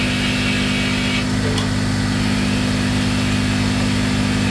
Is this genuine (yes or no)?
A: yes